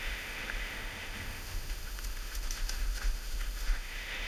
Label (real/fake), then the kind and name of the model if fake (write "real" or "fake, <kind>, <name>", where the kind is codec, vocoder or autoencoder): fake, autoencoder, DAC-VAE